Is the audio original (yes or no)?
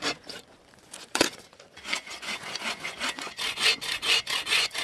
no